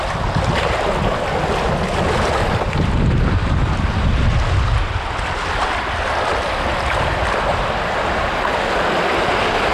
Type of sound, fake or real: real